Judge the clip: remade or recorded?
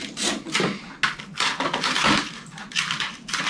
recorded